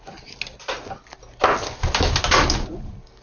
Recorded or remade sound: recorded